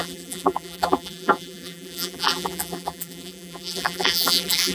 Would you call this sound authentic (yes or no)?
no